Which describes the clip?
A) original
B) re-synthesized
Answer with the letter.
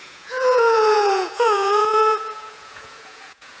B